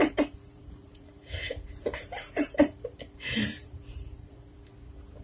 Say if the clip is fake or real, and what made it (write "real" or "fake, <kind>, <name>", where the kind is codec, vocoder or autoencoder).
fake, vocoder, BigVGAN v2